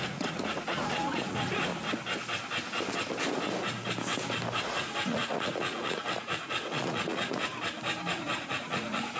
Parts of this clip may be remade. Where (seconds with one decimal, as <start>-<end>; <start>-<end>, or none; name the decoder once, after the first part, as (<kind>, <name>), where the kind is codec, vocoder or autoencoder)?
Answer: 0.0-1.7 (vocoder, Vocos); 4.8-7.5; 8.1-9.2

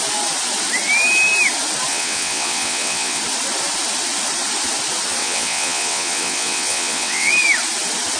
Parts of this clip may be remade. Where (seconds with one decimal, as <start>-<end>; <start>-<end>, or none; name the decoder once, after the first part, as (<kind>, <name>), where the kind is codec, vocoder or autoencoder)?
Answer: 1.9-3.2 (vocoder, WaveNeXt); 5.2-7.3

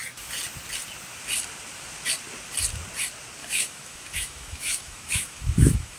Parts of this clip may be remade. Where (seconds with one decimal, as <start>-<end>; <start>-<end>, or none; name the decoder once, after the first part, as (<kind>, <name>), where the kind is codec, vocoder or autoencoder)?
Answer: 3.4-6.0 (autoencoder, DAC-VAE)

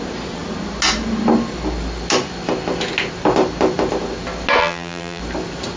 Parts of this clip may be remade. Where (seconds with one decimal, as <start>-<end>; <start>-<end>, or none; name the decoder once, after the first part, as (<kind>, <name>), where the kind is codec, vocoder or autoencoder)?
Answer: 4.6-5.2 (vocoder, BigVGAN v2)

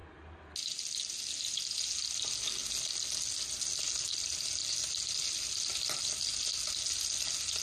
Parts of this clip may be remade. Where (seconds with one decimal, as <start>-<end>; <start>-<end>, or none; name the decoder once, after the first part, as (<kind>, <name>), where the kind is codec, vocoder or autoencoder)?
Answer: none

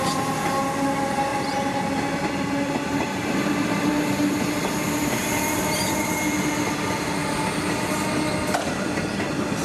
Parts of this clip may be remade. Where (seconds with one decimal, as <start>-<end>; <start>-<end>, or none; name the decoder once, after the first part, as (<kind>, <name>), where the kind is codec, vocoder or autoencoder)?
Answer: 1.3-6.1 (vocoder, BigVGAN v2)